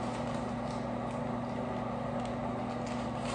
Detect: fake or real real